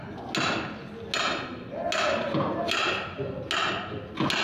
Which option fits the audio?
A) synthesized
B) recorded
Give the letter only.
B